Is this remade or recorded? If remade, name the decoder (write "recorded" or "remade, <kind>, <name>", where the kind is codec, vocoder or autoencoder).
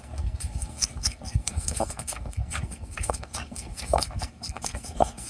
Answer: remade, codec, SNAC